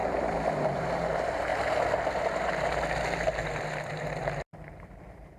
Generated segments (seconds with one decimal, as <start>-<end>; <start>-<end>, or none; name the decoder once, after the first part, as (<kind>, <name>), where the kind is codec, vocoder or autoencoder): 0.5-1.5 (vocoder, BigVGAN v2); 4.2-5.4